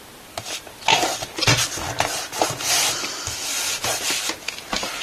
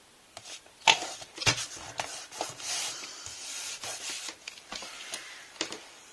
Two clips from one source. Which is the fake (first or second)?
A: second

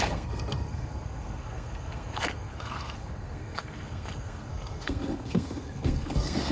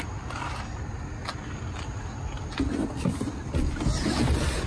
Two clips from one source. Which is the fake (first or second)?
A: first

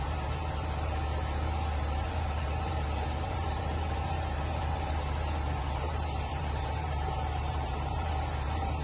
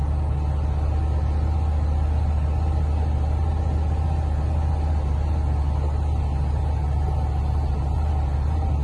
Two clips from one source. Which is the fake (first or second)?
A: first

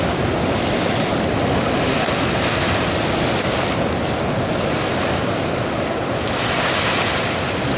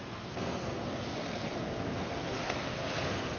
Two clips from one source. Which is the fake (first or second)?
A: second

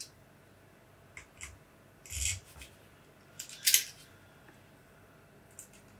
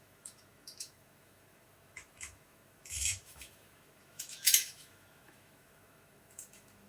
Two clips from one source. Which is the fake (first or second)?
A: second